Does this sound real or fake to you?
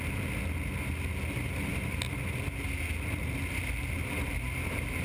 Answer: real